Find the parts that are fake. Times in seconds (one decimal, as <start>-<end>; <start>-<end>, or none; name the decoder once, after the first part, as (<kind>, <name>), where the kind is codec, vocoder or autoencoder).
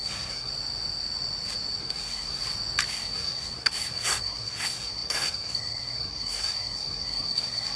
0.0-0.5 (codec, SNAC); 1.8-2.4; 2.9-7.8